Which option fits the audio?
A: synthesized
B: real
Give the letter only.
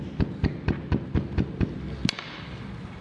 B